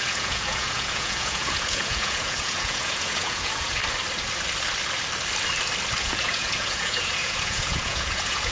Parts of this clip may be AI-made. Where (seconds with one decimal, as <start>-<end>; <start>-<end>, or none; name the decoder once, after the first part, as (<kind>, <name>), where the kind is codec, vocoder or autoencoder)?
0.0-3.8 (vocoder, Vocos); 6.0-8.5

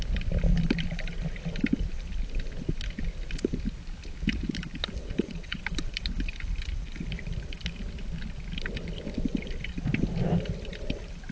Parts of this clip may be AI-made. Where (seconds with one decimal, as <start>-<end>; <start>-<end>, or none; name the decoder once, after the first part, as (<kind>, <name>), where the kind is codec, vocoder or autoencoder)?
5.0-5.6 (vocoder, Vocos)

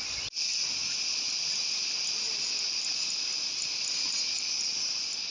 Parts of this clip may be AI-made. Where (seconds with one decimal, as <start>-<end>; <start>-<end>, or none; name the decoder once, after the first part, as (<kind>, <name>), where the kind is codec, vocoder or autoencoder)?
none

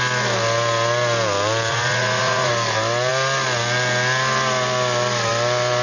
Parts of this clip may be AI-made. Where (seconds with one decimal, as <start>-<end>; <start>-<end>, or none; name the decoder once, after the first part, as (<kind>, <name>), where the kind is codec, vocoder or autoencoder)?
1.7-2.5 (vocoder, Vocos)

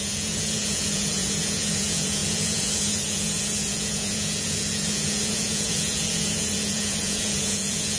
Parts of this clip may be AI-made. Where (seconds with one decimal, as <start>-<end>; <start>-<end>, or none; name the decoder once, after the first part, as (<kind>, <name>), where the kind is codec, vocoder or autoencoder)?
0.0-8.0 (vocoder, Vocos)